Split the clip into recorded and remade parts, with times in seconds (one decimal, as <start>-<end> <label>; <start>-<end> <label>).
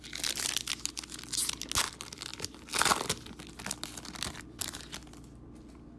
0.0-6.0 recorded